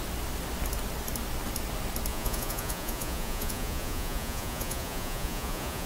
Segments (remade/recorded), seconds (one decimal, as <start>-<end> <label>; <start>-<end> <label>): 0.0-2.1 recorded; 2.1-5.9 remade